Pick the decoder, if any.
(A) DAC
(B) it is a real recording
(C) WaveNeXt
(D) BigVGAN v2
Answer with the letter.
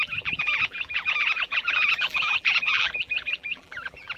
D